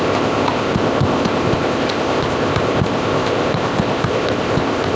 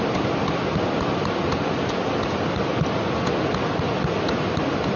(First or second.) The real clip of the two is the second